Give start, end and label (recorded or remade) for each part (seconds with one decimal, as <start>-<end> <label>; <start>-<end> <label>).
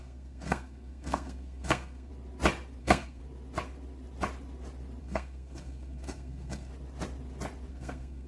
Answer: 0.0-2.1 remade; 2.1-2.8 recorded; 2.8-3.2 remade; 3.2-5.0 recorded; 5.0-6.7 remade; 6.7-7.7 recorded; 7.7-8.3 remade